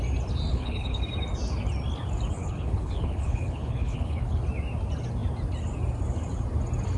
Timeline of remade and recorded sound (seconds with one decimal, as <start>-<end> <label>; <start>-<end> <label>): 0.0-0.5 recorded; 0.5-1.0 remade; 1.0-2.4 recorded; 2.4-4.4 remade; 4.4-7.0 recorded